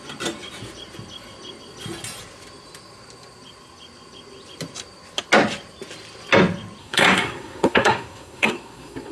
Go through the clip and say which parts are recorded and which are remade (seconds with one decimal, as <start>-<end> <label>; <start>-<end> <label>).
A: 0.0-6.8 recorded; 6.8-9.1 remade